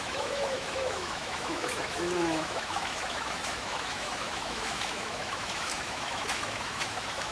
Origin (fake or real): fake